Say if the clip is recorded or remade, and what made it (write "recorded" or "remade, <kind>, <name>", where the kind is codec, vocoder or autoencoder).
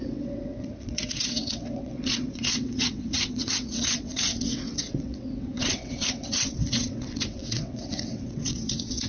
remade, vocoder, WaveNeXt